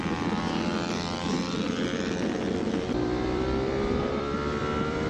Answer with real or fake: fake